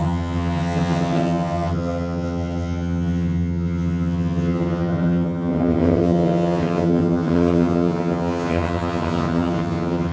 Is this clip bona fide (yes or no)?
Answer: no